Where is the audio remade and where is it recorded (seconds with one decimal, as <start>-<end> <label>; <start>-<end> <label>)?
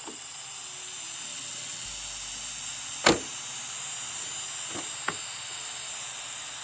0.0-1.3 recorded; 1.3-1.9 remade; 1.9-6.6 recorded